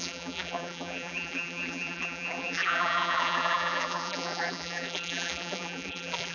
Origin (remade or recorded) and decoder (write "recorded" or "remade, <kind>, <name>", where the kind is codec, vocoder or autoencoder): remade, vocoder, BigVGAN v2